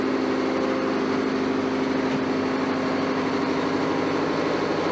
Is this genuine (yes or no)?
yes